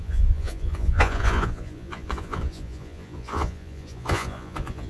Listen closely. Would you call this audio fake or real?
fake